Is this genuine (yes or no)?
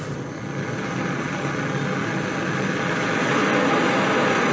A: yes